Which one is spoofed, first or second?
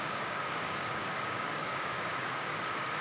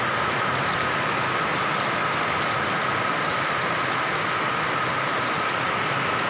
first